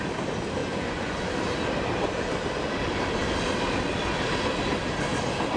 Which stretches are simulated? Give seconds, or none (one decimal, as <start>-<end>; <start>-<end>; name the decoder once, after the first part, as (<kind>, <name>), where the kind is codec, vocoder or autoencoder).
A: 0.6-1.3 (vocoder, Vocos)

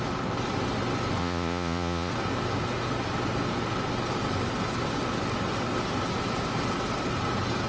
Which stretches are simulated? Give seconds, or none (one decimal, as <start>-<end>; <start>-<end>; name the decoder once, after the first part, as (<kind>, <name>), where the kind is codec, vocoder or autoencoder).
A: 1.2-2.1 (vocoder, Vocos)

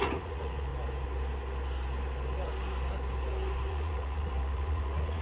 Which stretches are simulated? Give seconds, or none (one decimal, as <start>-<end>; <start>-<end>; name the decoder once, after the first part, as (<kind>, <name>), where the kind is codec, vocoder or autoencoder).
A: 0.0-0.7 (vocoder, Vocos); 3.7-5.2

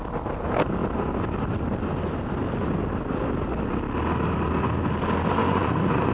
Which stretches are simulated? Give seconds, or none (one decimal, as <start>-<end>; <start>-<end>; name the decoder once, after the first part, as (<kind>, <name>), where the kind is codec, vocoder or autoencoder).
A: 5.4-6.1 (vocoder, Vocos)

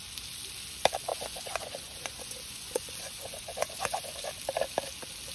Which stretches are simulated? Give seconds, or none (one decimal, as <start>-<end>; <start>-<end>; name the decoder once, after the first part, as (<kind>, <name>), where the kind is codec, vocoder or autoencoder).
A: 1.1-4.3 (vocoder, Vocos)

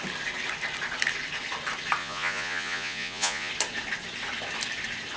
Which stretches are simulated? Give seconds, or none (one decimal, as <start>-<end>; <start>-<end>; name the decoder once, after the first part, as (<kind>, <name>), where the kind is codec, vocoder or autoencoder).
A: 2.0-3.5 (vocoder, Vocos)

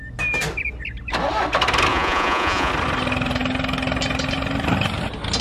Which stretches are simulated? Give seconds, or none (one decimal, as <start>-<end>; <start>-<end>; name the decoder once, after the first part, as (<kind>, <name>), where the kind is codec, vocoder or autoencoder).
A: 1.9-2.7 (vocoder, Vocos)

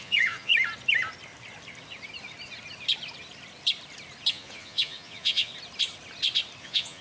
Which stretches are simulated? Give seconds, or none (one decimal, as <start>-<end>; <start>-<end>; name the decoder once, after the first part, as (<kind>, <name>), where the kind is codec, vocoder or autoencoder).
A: 0.0-0.5 (vocoder, Vocos); 4.3-5.5; 6.6-7.0